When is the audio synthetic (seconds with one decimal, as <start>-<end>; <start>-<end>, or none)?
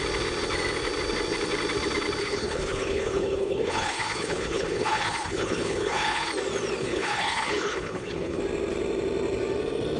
2.2-6.3; 6.8-8.4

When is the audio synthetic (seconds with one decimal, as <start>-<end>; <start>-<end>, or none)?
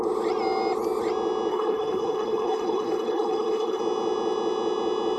1.5-3.8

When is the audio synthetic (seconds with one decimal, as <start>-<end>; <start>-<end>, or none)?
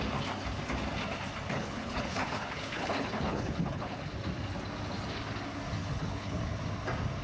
1.5-4.1; 5.8-6.6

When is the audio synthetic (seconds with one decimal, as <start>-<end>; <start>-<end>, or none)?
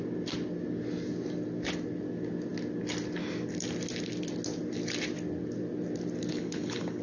6.3-7.0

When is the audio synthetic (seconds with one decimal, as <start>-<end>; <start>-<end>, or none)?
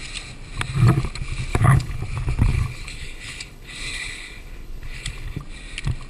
1.5-2.0; 2.5-5.4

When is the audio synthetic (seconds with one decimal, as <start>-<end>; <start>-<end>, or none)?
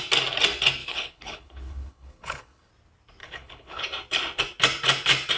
0.8-2.7; 3.2-3.8